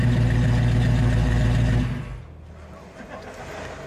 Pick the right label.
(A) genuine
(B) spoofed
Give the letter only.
A